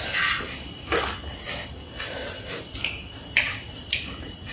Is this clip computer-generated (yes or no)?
no